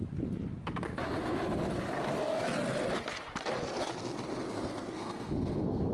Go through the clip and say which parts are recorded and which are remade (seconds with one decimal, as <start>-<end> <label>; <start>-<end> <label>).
0.0-4.5 recorded; 4.5-5.9 remade